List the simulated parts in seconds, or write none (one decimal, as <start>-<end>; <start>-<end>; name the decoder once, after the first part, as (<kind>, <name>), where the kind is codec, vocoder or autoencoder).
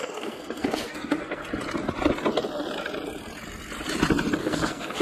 0.0-1.4 (codec, SNAC); 4.4-5.0